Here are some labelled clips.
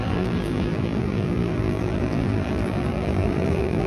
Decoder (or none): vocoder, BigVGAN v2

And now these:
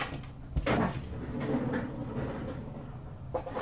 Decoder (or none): none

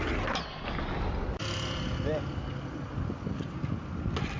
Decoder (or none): none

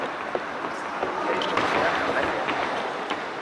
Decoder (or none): none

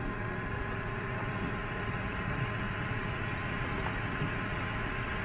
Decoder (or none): vocoder, Vocos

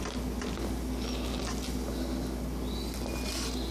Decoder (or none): none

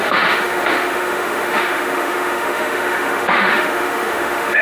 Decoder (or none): autoencoder, DAC-VAE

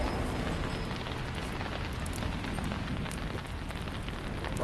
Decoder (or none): none